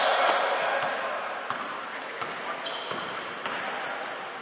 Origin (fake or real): real